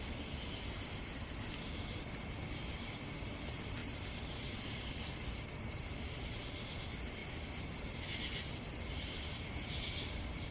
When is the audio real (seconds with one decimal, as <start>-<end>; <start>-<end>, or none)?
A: 0.0-7.2; 7.9-10.5